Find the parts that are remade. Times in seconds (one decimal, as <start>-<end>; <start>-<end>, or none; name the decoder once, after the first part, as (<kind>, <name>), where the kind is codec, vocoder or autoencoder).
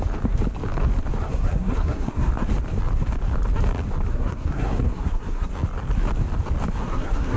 1.2-2.3 (codec, SNAC); 4.1-5.5; 6.8-7.4